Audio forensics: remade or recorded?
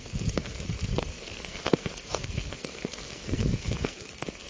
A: remade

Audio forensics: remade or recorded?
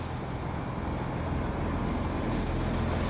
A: recorded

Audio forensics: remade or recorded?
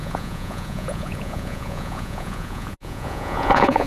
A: remade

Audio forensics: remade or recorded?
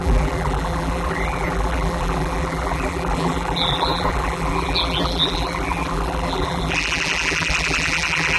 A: remade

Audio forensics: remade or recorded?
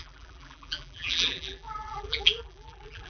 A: remade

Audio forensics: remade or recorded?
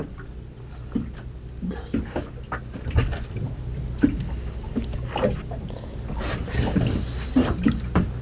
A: recorded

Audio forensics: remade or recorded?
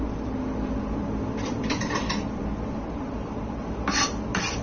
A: recorded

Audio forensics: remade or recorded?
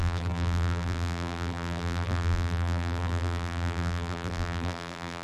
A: remade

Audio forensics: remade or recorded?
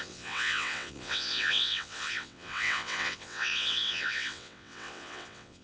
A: remade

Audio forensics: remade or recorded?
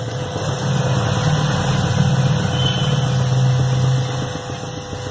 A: recorded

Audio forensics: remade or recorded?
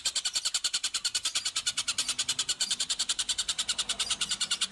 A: remade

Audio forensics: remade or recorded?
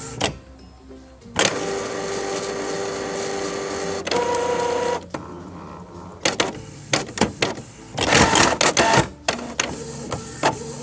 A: recorded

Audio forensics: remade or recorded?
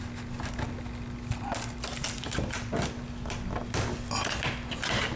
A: recorded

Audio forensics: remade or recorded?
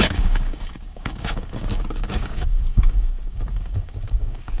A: remade